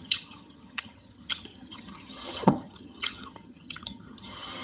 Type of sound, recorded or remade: remade